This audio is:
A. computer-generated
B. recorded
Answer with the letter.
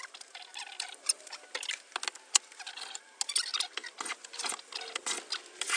B